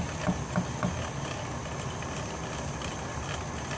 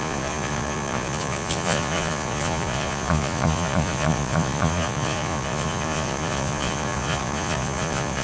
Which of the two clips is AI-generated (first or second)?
second